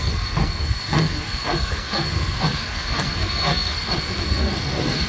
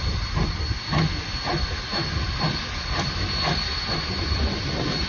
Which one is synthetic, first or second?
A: first